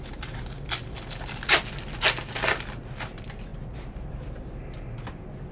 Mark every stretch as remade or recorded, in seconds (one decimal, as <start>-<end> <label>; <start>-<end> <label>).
0.0-3.5 recorded; 3.5-4.6 remade; 4.6-5.5 recorded